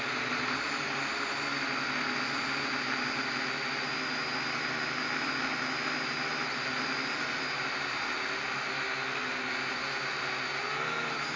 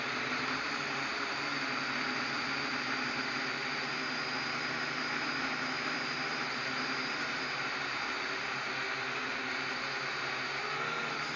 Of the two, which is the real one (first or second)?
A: first